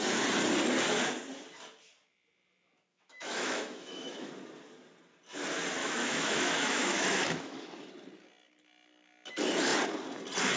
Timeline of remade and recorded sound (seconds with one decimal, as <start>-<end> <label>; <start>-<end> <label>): 0.0-2.9 recorded; 2.9-4.3 remade; 4.3-5.8 recorded; 5.8-7.9 remade; 7.9-10.6 recorded